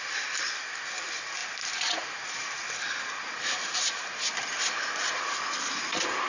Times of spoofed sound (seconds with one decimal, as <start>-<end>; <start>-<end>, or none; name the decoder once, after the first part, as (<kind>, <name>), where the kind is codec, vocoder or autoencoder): none